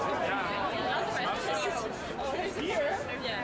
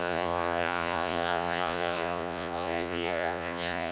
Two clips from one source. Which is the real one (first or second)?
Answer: first